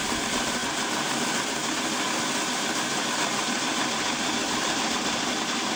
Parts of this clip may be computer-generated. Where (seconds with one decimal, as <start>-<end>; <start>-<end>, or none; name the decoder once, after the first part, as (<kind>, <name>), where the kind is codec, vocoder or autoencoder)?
none